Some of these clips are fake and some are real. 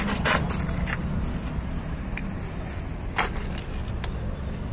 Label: real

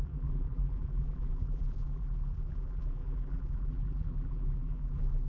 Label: fake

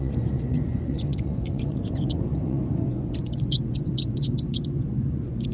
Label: fake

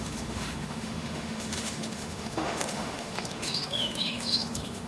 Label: fake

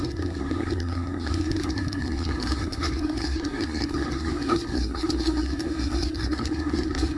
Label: fake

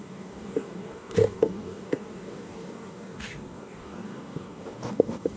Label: fake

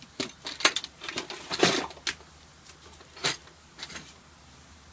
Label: real